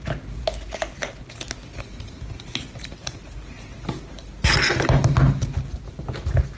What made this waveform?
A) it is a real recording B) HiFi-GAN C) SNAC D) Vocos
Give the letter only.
A